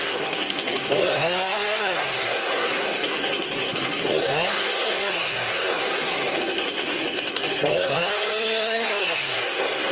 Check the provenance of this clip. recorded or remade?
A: remade